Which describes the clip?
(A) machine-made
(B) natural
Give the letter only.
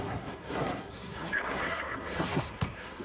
A